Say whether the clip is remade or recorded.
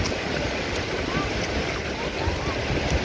recorded